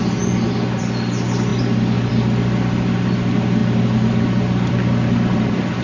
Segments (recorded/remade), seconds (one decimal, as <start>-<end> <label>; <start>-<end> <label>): 0.0-5.8 recorded